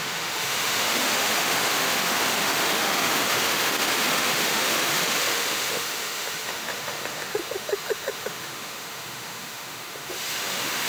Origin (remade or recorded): remade